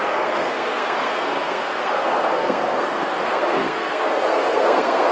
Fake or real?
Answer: fake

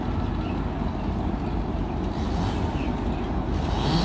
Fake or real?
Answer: real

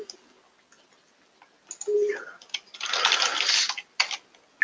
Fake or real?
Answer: real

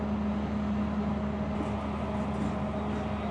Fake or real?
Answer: real